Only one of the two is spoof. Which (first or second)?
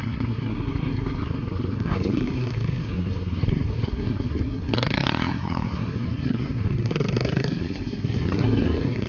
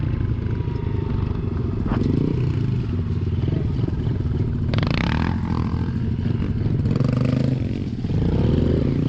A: first